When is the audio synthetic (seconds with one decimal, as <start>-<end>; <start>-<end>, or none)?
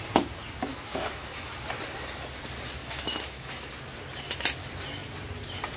0.7-1.5; 2.8-3.7